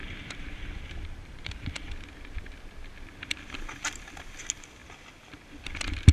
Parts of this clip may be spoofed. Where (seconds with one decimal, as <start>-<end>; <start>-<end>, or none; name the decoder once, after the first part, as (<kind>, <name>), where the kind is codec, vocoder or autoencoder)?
0.0-1.5 (vocoder, BigVGAN v2)

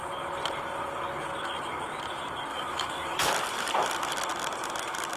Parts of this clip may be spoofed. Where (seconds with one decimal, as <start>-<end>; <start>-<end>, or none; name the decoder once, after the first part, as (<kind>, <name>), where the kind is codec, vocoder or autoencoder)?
2.5-3.3 (autoencoder, DAC-VAE)

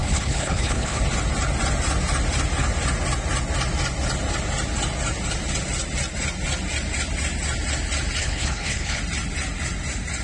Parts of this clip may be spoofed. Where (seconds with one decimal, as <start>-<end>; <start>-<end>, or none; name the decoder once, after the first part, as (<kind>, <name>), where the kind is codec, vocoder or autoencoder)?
0.0-1.0 (codec, HILCodec); 8.2-9.0

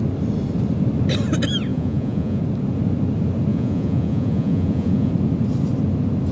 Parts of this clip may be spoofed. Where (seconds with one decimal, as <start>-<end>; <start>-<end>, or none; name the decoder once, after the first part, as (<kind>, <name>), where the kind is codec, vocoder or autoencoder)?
1.7-2.4 (vocoder, Vocos); 3.5-5.1

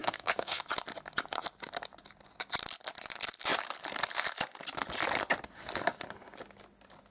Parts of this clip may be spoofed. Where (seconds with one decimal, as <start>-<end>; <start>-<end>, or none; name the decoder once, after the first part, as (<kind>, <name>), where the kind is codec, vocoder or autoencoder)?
0.0-0.6 (codec, SNAC)